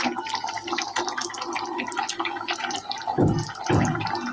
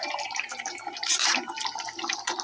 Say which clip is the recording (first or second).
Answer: first